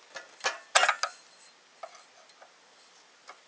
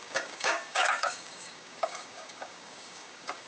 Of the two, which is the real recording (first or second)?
first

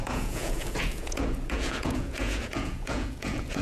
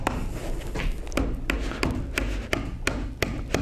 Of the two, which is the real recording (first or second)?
second